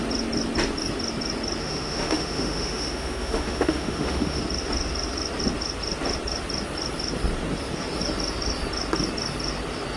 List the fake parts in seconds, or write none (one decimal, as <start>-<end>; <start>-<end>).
1.6-4.4